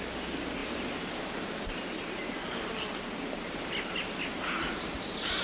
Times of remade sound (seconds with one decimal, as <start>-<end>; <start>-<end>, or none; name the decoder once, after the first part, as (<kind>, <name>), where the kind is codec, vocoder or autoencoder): none